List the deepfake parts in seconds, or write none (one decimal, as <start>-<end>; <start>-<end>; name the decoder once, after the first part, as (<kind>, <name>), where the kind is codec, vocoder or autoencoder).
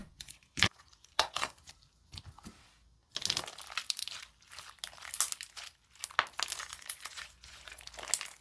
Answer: 0.0-1.7 (vocoder, Vocos); 6.6-7.8